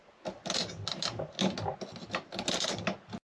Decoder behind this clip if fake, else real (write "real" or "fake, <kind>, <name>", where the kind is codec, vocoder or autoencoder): real